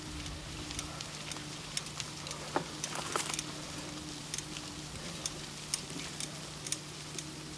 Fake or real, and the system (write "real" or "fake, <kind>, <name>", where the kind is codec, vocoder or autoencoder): real